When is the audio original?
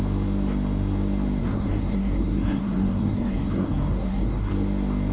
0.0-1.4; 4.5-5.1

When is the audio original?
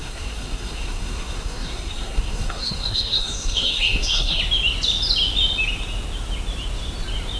4.4-7.4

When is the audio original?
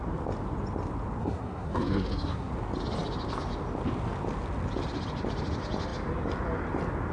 0.0-1.2; 2.5-7.1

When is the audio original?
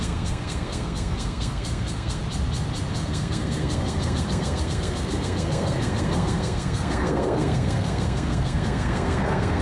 2.2-2.9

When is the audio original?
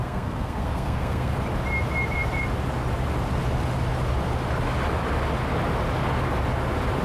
1.3-7.0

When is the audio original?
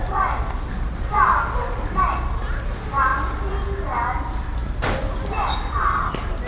0.0-6.5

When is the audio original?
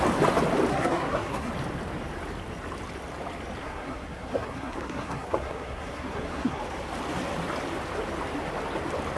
0.0-0.7; 1.5-3.6; 6.6-9.2